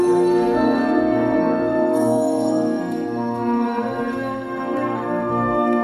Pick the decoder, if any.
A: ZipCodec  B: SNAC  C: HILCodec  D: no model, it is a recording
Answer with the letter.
B